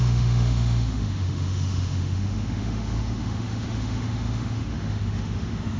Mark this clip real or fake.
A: fake